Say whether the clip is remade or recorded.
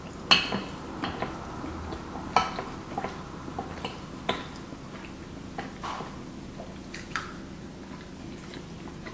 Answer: recorded